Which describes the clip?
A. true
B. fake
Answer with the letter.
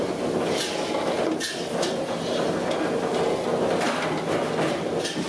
A